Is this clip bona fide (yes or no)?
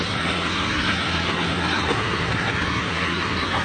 no